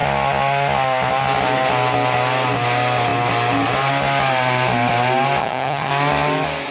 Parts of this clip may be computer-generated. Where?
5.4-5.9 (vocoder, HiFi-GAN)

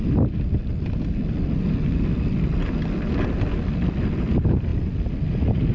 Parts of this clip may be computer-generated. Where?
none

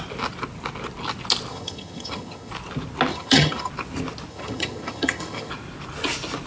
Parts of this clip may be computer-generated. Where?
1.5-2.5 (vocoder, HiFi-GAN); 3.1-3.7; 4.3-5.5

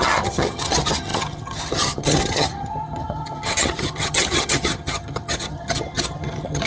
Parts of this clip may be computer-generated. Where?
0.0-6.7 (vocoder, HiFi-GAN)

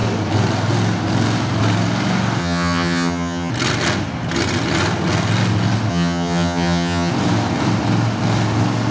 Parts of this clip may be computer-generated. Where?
2.4-3.5 (vocoder, HiFi-GAN); 5.9-7.1

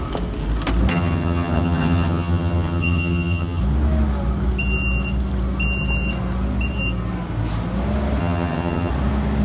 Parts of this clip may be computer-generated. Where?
0.9-3.6 (vocoder, HiFi-GAN); 8.2-8.9